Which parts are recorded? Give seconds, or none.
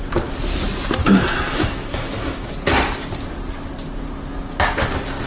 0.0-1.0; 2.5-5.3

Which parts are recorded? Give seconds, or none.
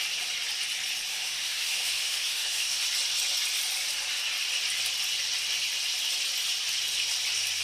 0.0-1.1; 2.8-7.6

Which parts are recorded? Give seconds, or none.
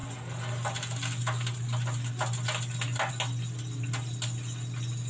0.0-5.1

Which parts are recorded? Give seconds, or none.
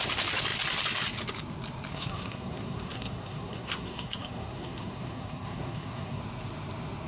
0.0-1.9; 6.2-7.1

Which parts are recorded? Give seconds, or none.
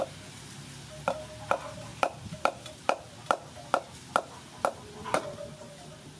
0.0-6.2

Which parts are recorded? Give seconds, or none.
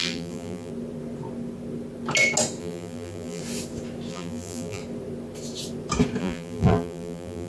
0.7-2.6; 3.4-4.1; 4.8-6.2